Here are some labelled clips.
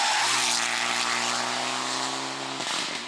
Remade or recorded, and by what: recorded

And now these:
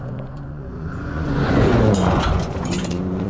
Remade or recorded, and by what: remade, vocoder, Vocos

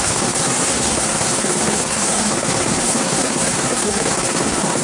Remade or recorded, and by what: remade, codec, SNAC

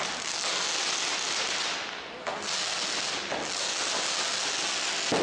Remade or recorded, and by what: recorded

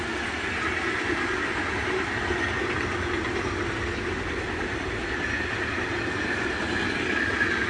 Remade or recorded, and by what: recorded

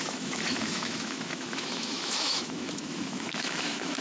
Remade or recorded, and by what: remade, autoencoder, DAC-VAE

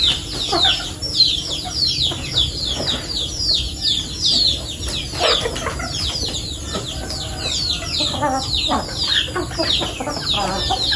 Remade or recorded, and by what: recorded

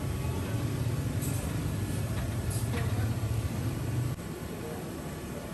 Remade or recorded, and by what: recorded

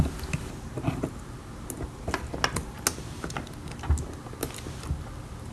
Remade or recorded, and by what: recorded